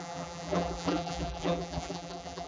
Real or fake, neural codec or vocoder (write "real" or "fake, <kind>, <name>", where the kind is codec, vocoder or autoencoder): fake, vocoder, BigVGAN v2